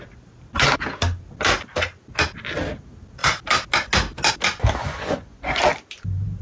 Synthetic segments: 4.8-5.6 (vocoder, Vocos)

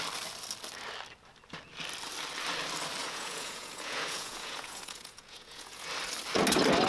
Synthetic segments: 3.0-5.9 (vocoder, Vocos)